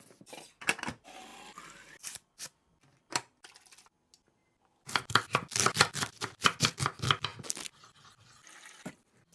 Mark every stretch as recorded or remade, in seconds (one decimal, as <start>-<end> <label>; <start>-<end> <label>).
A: 0.0-9.3 recorded